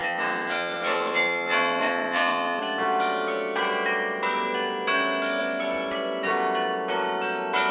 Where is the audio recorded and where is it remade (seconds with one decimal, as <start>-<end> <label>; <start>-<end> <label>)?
0.0-2.6 remade; 2.6-7.7 recorded